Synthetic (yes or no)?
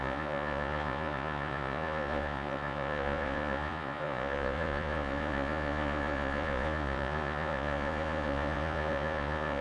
yes